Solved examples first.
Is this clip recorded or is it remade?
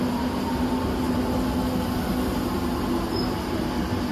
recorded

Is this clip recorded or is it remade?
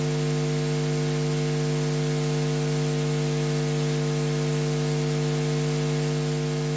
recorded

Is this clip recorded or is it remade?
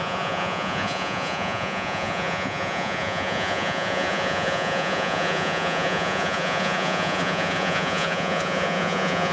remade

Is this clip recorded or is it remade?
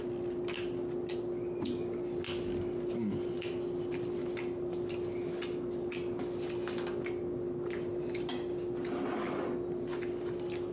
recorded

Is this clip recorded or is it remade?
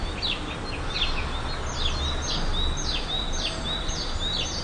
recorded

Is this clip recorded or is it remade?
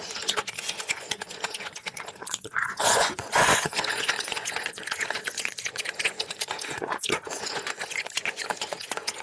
remade